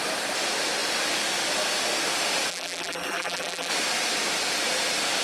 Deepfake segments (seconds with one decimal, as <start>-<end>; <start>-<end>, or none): 2.5-3.7